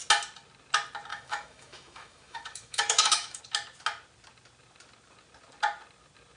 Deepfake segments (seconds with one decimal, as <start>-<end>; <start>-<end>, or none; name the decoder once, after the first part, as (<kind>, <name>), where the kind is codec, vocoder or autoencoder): 1.1-3.4 (autoencoder, DAC-VAE)